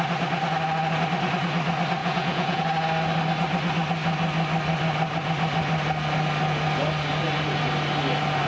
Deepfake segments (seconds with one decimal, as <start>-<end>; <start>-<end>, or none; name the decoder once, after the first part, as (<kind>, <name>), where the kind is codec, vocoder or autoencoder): 2.0-2.6 (vocoder, Vocos)